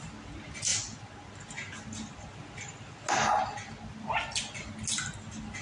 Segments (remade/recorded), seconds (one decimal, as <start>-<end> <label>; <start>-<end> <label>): 0.0-5.6 recorded